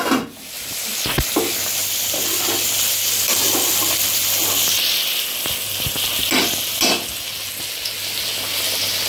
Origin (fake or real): real